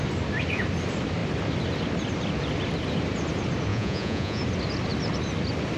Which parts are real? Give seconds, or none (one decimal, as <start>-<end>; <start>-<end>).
0.0-3.7; 4.4-5.8